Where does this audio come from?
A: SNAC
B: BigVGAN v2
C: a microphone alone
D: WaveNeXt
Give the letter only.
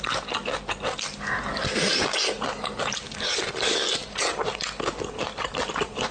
C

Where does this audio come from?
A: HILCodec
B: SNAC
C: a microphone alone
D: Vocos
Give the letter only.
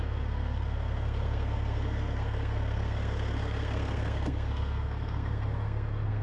B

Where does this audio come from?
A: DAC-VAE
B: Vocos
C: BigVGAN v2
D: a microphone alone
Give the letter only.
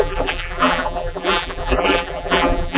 C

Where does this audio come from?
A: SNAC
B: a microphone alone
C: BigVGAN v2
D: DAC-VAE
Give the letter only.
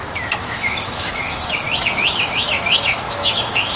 D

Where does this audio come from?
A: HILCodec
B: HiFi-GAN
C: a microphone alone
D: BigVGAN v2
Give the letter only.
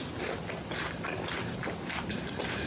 C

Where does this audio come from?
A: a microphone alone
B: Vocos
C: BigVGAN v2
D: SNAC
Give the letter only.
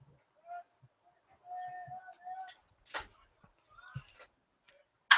A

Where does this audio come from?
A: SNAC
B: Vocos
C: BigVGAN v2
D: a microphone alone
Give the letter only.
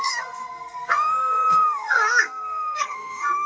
A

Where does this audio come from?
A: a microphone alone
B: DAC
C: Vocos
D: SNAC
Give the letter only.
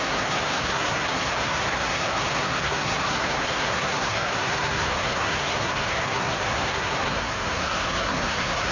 D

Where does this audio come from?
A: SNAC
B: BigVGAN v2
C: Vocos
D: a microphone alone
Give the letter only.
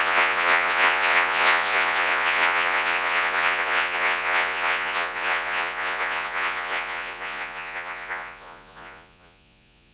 C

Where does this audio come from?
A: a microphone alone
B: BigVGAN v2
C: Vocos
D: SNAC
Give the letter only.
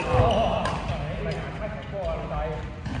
A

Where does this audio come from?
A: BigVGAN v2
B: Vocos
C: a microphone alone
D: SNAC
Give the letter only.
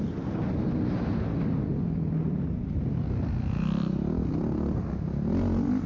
C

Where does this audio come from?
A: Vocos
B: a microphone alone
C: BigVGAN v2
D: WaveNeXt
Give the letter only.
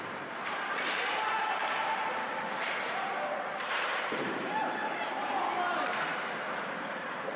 C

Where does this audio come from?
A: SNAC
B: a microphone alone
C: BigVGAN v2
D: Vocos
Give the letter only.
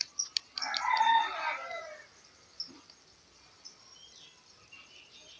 B